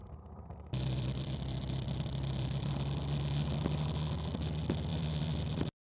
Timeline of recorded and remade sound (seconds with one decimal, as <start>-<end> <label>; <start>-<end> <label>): 0.0-2.7 remade; 2.7-4.9 recorded; 4.9-5.9 remade